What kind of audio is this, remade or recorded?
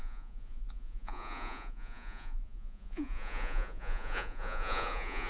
remade